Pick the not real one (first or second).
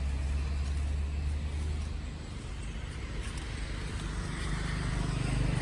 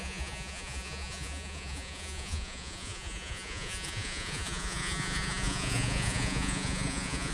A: second